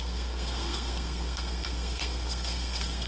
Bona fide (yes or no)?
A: no